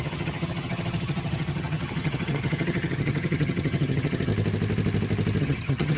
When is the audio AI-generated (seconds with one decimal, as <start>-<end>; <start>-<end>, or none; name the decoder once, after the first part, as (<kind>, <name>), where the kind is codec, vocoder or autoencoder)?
0.0-4.3 (vocoder, HiFi-GAN); 5.4-6.0